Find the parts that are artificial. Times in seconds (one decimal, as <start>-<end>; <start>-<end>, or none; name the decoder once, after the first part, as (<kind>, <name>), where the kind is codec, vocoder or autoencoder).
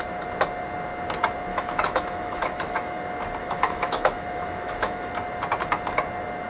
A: 1.5-3.0 (autoencoder, DAC-VAE); 3.4-5.1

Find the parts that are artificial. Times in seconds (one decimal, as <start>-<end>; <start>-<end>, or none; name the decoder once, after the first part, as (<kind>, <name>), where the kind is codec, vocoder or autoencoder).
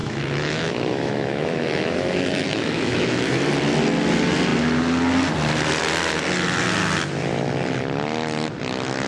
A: 0.0-3.4 (autoencoder, DAC-VAE)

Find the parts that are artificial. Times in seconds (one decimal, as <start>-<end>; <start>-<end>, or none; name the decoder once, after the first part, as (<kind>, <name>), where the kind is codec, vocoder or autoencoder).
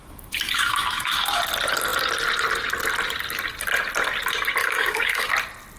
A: 0.0-1.4 (autoencoder, DAC-VAE); 4.6-5.3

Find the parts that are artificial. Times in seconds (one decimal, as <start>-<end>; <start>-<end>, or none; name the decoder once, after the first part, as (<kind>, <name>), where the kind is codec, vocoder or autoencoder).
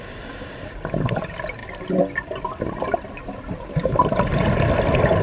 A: none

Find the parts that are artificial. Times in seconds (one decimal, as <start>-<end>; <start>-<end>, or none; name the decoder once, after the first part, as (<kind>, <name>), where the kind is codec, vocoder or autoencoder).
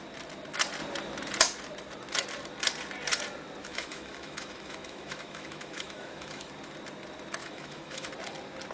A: 3.6-6.5 (autoencoder, DAC-VAE); 7.4-8.1